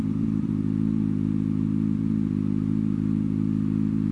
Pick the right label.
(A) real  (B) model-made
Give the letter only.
B